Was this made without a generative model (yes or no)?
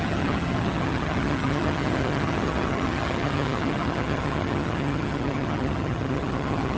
no